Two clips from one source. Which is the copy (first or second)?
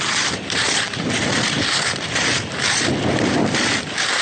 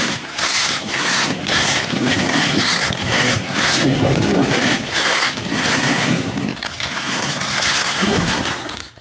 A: second